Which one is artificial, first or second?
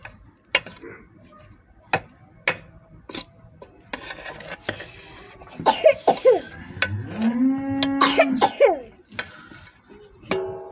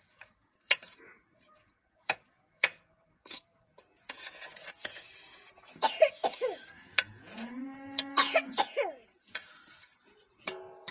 second